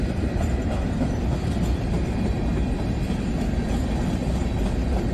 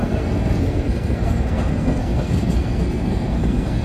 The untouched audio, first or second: first